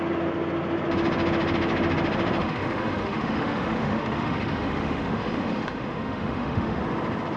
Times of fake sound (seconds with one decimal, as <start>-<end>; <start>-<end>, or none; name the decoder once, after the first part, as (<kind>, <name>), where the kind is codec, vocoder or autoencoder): 2.4-6.8 (autoencoder, DAC-VAE)